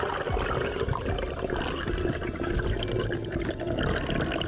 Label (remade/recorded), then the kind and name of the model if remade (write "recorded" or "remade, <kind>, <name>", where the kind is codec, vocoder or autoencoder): recorded